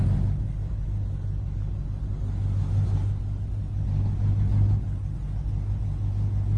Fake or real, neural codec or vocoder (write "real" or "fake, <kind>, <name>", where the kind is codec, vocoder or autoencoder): real